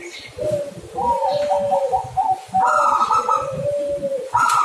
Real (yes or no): yes